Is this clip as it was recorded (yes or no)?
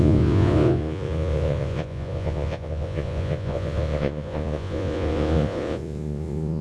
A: no